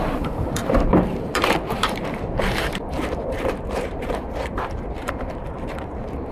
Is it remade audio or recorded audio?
remade